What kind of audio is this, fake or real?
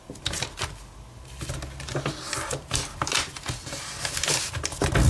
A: real